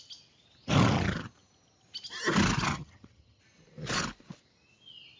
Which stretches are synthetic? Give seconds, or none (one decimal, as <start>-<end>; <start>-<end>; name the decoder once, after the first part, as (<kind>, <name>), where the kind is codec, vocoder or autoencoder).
2.7-3.4 (vocoder, HiFi-GAN)